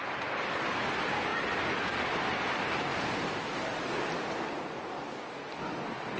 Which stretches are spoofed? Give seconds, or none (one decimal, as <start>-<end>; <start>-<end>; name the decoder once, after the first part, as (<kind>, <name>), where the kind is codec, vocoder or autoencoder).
none